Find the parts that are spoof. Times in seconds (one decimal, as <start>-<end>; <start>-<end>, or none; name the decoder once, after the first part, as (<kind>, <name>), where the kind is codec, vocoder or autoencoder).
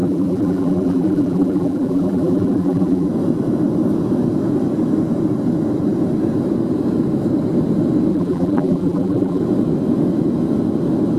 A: 0.0-3.1 (vocoder, BigVGAN v2); 8.1-9.4